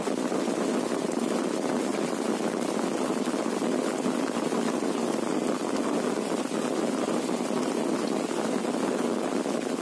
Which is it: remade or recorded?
recorded